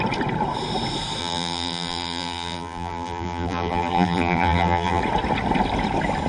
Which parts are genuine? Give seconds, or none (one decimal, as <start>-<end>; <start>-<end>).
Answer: 0.0-1.2; 5.0-6.3